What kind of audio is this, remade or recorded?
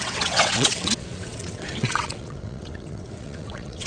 remade